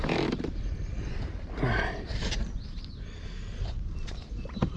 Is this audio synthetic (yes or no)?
yes